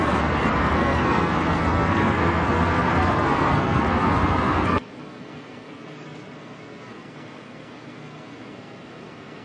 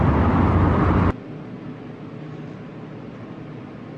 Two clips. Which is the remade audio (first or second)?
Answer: first